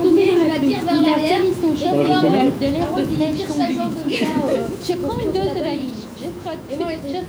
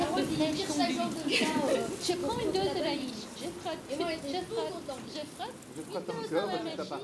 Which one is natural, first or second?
second